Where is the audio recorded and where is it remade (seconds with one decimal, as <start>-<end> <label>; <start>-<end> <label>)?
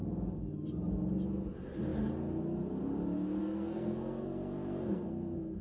0.0-3.4 recorded; 3.4-5.6 remade